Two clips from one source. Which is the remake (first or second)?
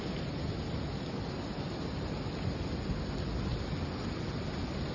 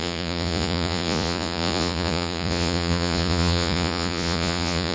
second